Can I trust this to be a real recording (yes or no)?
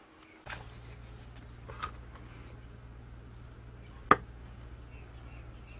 yes